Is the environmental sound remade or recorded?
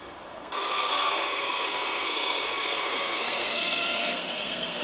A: remade